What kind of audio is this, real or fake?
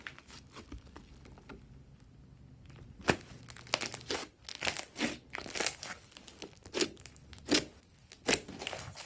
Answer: real